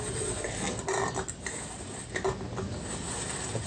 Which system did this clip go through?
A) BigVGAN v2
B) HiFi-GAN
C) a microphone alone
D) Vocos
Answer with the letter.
C